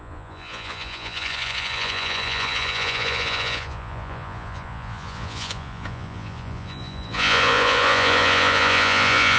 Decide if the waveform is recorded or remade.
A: remade